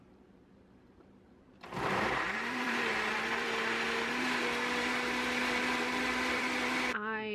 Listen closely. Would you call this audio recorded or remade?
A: remade